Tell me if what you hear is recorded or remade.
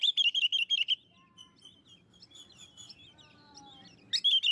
recorded